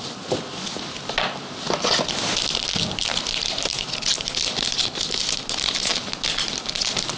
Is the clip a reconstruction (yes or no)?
no